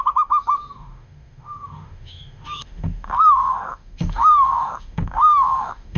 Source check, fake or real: fake